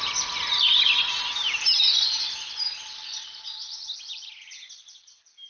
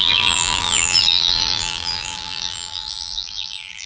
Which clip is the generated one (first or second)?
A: second